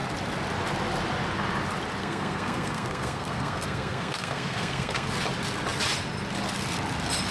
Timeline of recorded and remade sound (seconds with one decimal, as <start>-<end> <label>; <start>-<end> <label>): 0.0-2.0 recorded; 2.0-5.1 remade; 5.1-7.3 recorded